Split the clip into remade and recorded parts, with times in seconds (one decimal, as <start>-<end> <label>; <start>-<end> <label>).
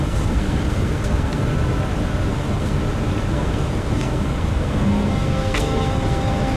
0.0-1.5 remade; 1.5-2.3 recorded; 2.3-2.8 remade; 2.8-3.3 recorded; 3.3-6.6 remade